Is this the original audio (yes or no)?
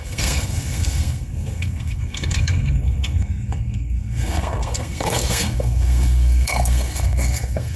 no